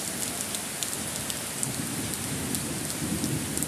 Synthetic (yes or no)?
no